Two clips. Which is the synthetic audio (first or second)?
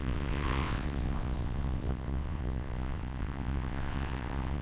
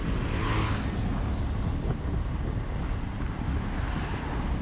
first